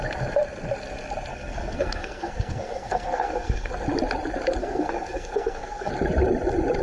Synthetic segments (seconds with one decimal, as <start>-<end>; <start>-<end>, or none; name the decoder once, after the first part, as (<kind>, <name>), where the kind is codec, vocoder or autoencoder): 1.3-3.7 (codec, SNAC); 4.6-5.9